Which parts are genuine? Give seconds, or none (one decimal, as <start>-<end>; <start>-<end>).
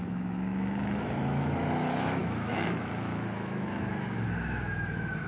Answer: none